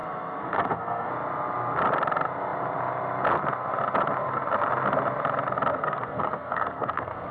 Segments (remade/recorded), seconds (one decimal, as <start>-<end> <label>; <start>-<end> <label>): 0.0-1.1 remade; 1.1-5.7 recorded; 5.7-7.3 remade